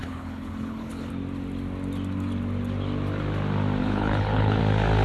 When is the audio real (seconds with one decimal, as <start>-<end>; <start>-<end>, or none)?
1.1-3.8; 4.6-5.0